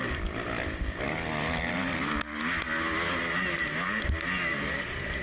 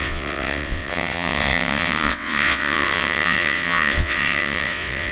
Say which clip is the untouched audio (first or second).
first